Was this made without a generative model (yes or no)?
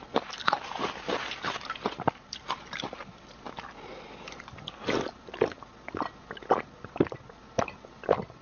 yes